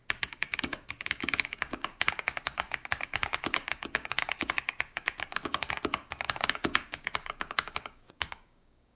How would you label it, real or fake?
fake